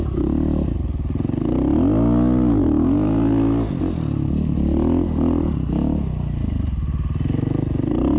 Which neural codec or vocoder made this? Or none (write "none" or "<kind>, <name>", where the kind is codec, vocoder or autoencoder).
none